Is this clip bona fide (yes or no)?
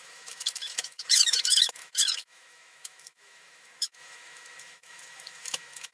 no